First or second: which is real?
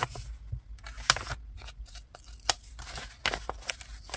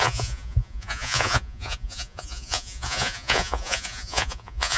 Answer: first